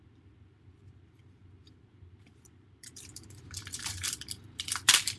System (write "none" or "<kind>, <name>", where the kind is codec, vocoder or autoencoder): vocoder, BigVGAN v2